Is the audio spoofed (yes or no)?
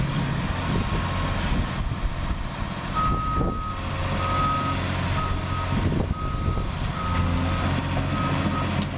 no